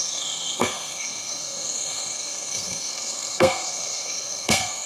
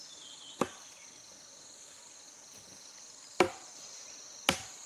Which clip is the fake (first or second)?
first